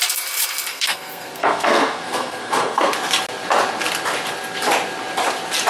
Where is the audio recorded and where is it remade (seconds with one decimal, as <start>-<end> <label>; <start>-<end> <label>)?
0.0-0.7 recorded; 0.7-2.9 remade; 2.9-5.7 recorded